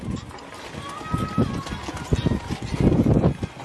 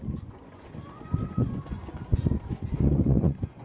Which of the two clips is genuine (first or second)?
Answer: first